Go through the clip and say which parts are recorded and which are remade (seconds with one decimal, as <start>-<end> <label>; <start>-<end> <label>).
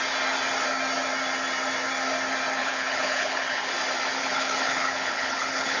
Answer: 0.0-2.6 recorded; 2.6-3.7 remade; 3.7-4.2 recorded; 4.2-5.8 remade